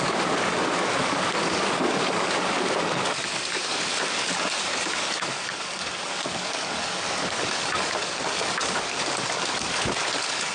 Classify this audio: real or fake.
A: fake